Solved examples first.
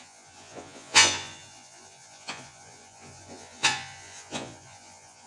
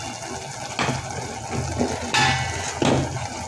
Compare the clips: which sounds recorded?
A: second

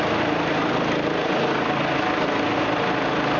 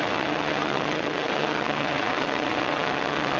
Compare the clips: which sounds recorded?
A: first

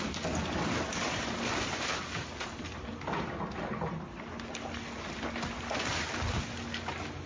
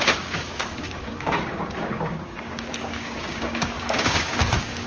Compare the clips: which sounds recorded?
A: first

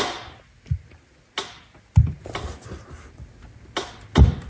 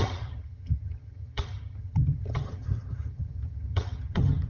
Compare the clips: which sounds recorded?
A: first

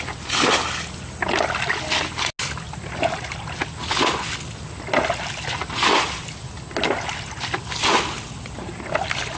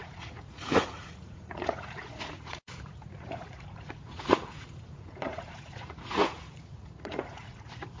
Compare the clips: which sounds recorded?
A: first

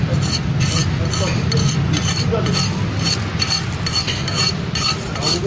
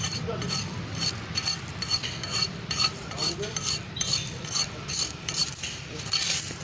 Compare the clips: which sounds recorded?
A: first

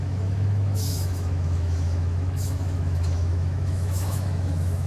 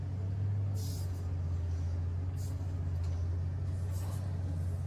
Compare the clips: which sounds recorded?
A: second